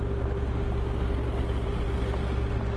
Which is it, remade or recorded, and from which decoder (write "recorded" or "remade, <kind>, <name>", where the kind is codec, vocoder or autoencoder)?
recorded